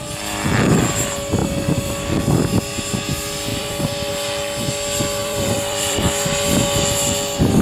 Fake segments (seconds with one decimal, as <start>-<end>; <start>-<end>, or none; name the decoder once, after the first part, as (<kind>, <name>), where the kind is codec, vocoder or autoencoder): 1.4-2.2 (vocoder, BigVGAN v2); 3.5-4.1; 5.2-6.6

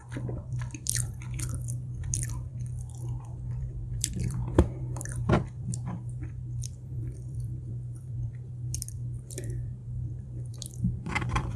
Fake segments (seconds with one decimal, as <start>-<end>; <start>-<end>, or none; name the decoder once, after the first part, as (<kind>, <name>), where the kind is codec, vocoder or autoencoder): 0.0-2.5 (vocoder, BigVGAN v2); 3.2-11.6

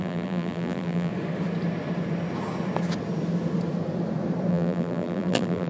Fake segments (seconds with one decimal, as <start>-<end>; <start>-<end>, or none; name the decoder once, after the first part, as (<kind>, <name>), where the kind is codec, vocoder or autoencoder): 0.0-1.1 (vocoder, BigVGAN v2); 4.5-5.7

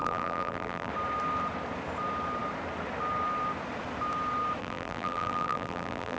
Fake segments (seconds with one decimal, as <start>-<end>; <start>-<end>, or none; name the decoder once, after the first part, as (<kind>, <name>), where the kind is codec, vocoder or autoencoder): 0.0-0.9 (vocoder, BigVGAN v2); 4.6-6.2